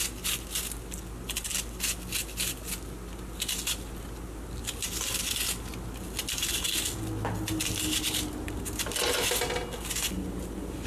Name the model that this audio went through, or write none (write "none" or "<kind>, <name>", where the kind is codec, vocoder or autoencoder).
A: none